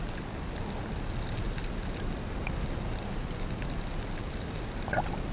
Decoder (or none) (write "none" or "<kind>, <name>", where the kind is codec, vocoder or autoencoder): none